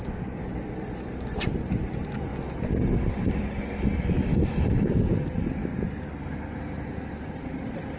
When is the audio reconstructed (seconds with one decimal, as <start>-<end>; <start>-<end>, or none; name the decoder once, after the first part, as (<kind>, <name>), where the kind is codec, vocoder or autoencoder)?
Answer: 0.0-2.3 (vocoder, BigVGAN v2); 4.0-5.7; 6.3-8.0